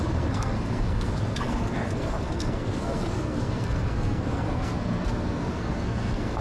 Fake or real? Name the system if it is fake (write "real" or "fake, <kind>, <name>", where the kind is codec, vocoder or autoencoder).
fake, codec, SNAC